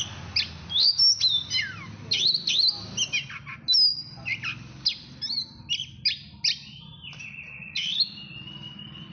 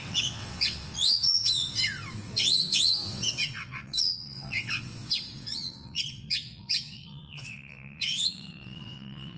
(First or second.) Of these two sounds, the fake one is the second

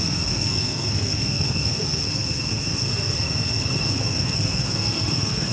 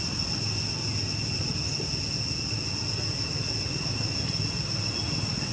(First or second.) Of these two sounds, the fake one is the first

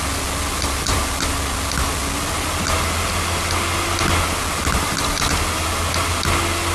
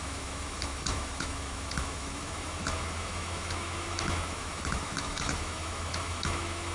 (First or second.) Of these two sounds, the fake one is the second